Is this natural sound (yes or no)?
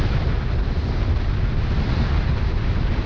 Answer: yes